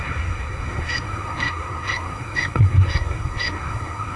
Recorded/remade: remade